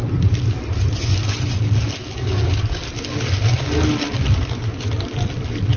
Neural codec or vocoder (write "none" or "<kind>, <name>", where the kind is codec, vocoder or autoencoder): none